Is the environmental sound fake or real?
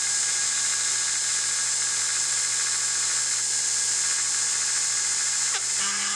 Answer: real